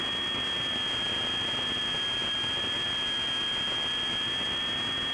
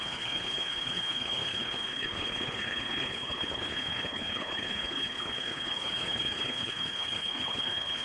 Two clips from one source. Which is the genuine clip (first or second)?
first